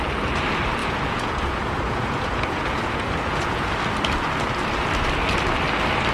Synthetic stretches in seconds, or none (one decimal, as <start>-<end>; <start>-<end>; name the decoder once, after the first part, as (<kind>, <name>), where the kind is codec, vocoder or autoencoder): 0.8-3.7 (vocoder, Vocos)